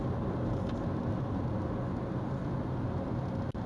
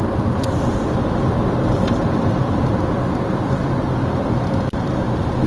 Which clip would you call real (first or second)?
first